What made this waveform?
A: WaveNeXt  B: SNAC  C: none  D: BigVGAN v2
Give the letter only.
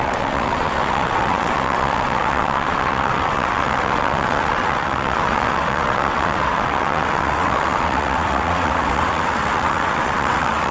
A